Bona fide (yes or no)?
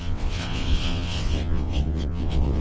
no